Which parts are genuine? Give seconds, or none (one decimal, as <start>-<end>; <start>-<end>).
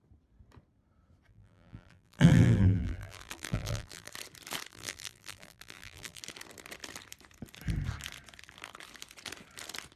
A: 0.0-1.3; 4.1-4.7; 6.2-10.0